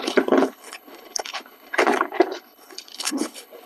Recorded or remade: remade